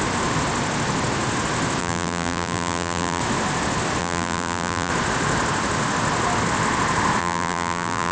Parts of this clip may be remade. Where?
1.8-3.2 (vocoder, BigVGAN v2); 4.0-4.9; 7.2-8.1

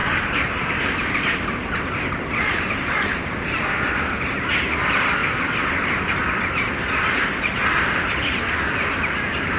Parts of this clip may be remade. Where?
0.0-1.2 (vocoder, BigVGAN v2); 3.1-4.0; 5.2-6.2